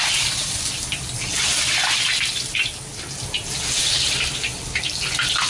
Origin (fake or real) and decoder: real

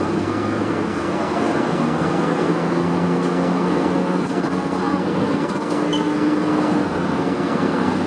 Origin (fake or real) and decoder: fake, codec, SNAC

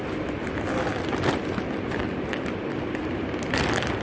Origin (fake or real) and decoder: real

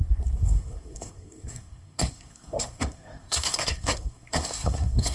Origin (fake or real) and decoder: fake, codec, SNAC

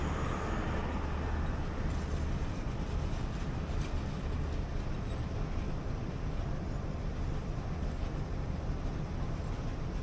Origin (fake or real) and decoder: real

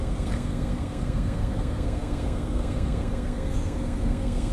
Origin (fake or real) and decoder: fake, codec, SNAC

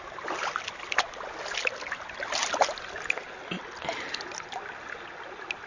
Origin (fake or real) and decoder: real